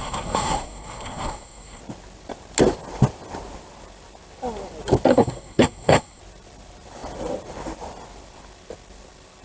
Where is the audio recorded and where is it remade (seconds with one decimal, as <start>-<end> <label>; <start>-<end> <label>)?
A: 0.0-1.8 remade; 1.8-5.1 recorded; 5.1-6.2 remade; 6.2-9.4 recorded